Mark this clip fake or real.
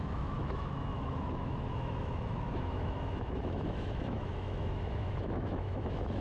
fake